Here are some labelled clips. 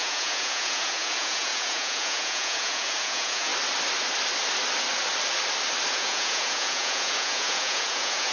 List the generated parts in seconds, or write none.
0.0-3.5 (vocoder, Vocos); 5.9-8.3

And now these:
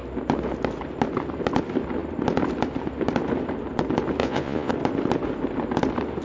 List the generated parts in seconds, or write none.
4.2-4.7 (vocoder, Vocos)

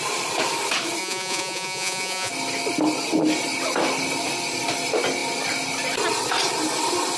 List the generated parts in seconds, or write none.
1.0-2.3 (vocoder, Vocos)

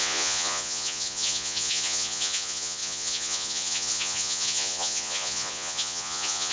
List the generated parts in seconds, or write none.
0.0-6.5 (vocoder, Vocos)

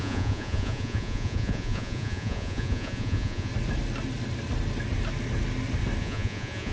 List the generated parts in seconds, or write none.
0.0-3.5 (vocoder, Vocos); 6.0-6.7

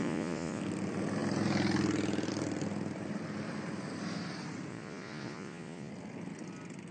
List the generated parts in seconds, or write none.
0.0-0.6 (vocoder, Vocos); 4.7-5.9

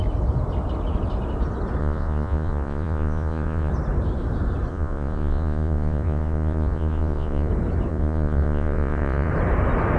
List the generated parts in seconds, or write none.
1.8-3.7 (vocoder, Vocos); 4.7-7.5; 7.9-9.3